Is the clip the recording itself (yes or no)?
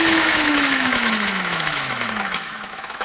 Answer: no